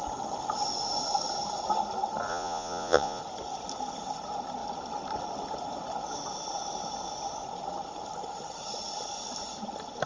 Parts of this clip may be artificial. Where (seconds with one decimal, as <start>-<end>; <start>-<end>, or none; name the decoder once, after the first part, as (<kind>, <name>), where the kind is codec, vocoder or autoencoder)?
2.3-3.2 (vocoder, Vocos)